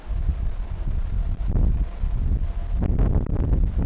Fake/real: real